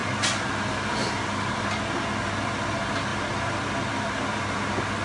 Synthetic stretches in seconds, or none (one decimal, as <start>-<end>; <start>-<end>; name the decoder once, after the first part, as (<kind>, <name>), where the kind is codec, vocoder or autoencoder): none